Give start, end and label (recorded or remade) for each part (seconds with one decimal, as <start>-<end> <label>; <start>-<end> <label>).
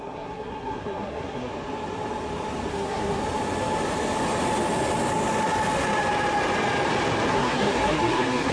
0.0-1.5 remade; 1.5-2.7 recorded; 2.7-3.2 remade; 3.2-7.3 recorded; 7.3-8.5 remade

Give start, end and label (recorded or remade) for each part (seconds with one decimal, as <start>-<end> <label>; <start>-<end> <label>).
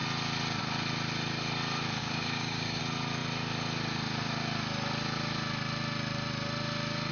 0.0-2.0 recorded; 2.0-2.8 remade; 2.8-7.1 recorded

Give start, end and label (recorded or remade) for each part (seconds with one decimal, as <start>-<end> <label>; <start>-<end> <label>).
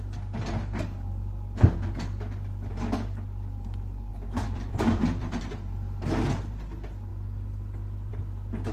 0.0-4.1 recorded; 4.1-5.4 remade; 5.4-8.7 recorded